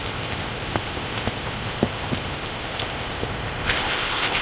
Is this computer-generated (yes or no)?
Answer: yes